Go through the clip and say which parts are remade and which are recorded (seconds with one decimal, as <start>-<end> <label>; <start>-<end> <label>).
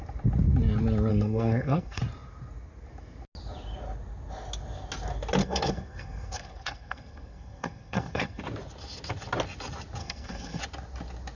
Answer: 0.0-1.1 recorded; 1.1-2.0 remade; 2.0-5.4 recorded; 5.4-8.4 remade; 8.4-10.0 recorded; 10.0-10.6 remade; 10.6-11.3 recorded